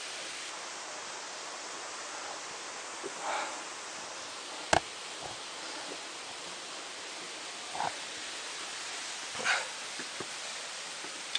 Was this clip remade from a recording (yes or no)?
no